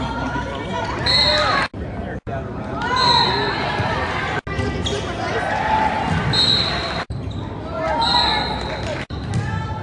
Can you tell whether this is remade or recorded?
recorded